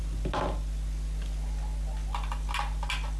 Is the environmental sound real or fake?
real